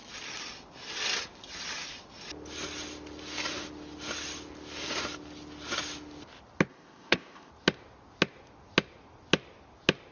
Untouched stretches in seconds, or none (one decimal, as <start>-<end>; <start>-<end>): 0.0-6.7; 7.5-10.1